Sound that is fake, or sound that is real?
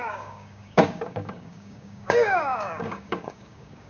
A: fake